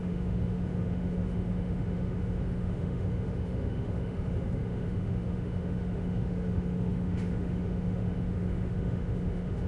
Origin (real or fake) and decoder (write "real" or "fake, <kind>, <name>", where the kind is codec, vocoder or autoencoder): fake, autoencoder, DAC-VAE